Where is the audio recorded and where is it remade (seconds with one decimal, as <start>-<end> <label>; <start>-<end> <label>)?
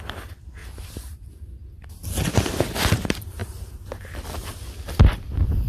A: 0.0-0.6 remade; 0.6-2.3 recorded; 2.3-3.4 remade; 3.4-4.9 recorded; 4.9-5.7 remade